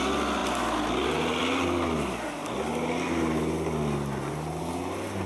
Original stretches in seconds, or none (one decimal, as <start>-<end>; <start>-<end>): 0.0-5.3